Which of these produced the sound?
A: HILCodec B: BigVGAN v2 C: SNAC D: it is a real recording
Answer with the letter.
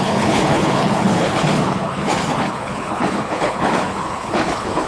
A